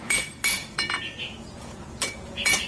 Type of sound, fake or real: fake